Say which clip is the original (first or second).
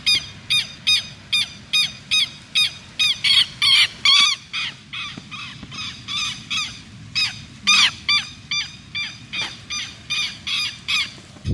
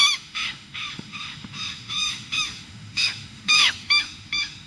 first